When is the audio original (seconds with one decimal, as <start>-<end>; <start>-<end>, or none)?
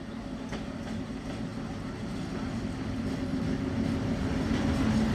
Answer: 0.0-5.1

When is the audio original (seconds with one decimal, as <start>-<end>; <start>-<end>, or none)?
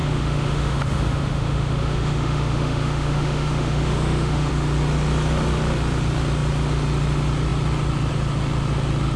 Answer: 4.5-9.2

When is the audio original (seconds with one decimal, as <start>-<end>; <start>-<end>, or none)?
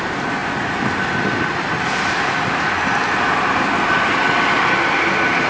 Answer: 0.0-5.5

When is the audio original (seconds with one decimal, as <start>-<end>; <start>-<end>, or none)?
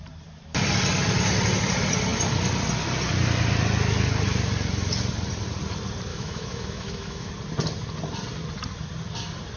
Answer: 0.0-6.1; 7.3-9.6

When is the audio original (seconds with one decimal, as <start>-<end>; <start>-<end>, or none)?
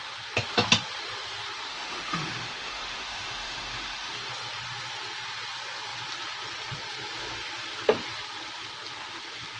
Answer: 0.0-1.7; 4.3-9.6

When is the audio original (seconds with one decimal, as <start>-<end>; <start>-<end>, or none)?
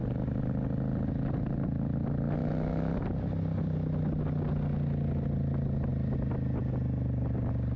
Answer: 0.0-2.4; 2.9-7.8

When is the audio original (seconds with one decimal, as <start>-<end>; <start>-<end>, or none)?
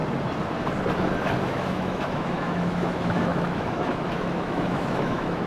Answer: 0.0-1.4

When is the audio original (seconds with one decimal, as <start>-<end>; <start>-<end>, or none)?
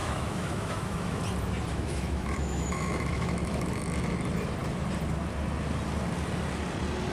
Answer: 1.2-1.7; 3.8-7.1